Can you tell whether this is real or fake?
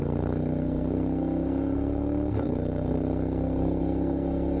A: fake